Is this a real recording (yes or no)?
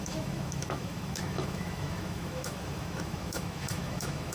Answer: no